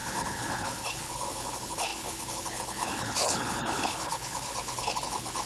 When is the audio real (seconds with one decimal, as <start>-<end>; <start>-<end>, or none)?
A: none